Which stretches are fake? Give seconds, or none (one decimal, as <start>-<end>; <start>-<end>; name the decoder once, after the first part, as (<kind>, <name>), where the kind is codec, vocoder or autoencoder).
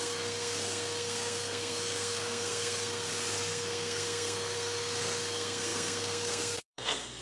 0.0-7.2 (codec, SNAC)